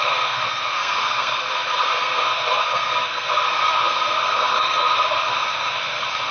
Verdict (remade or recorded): remade